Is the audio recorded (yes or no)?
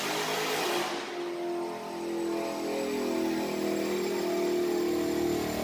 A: yes